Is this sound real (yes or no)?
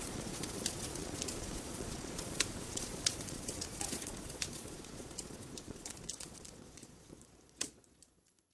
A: no